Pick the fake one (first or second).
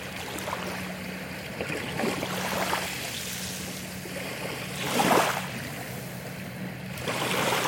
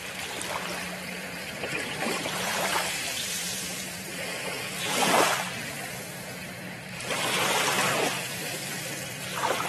second